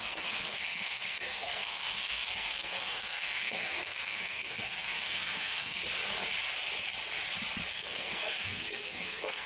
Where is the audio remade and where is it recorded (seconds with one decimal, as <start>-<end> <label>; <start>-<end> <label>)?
0.0-5.8 remade; 5.8-7.7 recorded; 7.7-9.5 remade